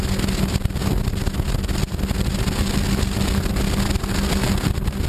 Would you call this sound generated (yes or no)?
no